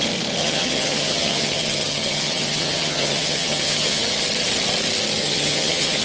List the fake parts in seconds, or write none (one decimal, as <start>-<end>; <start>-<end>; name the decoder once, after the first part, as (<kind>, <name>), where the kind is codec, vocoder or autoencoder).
0.4-4.0 (vocoder, HiFi-GAN); 5.2-6.0